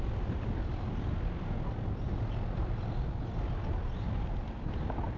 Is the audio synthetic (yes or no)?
no